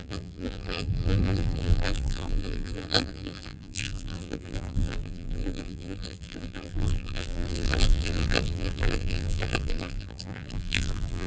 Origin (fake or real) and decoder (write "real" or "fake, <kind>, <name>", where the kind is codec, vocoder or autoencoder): fake, vocoder, BigVGAN v2